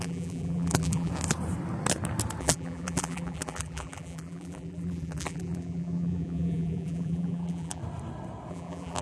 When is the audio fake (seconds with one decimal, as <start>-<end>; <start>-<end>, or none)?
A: 0.0-1.1; 2.4-7.8; 8.5-9.0